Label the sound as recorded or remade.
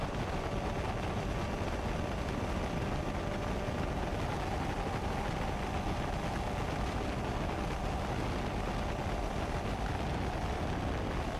recorded